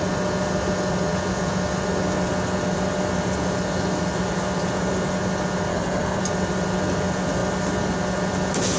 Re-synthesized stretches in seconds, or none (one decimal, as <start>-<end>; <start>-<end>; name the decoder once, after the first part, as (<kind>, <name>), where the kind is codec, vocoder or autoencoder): 5.7-6.2 (codec, HILCodec)